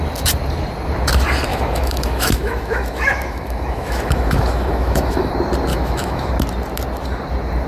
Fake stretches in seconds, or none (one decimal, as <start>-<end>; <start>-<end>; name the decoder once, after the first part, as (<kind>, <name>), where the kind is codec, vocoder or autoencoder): 1.5-5.3 (autoencoder, DAC-VAE); 5.7-6.3